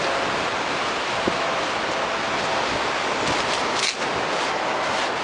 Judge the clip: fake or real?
real